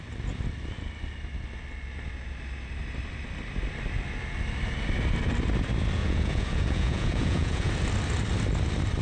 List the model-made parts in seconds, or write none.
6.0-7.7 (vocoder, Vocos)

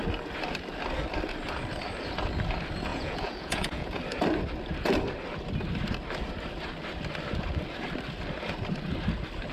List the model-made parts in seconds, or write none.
2.9-4.0 (vocoder, Vocos)

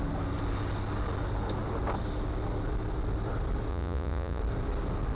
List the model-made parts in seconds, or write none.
3.7-4.4 (vocoder, Vocos)

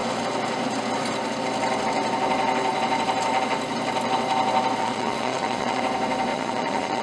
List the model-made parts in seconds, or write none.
4.8-5.8 (vocoder, Vocos); 6.3-7.0

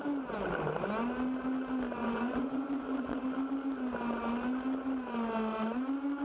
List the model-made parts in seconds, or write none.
2.0-3.2 (vocoder, Vocos)

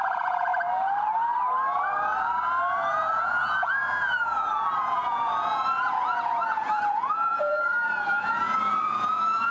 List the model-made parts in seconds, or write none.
0.0-0.5 (vocoder, Vocos); 2.9-9.5

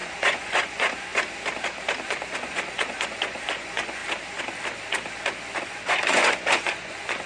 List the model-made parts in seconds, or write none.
0.0-1.1 (vocoder, Vocos); 2.1-4.0; 5.6-7.3